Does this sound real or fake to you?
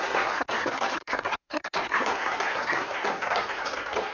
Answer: fake